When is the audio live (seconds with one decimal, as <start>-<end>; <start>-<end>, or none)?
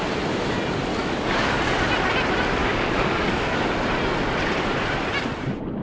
0.0-0.9; 1.6-2.6; 3.6-5.8